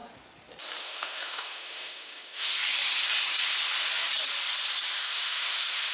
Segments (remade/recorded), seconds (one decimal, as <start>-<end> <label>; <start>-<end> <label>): 0.0-0.8 recorded; 0.8-2.6 remade; 2.6-5.0 recorded; 5.0-5.9 remade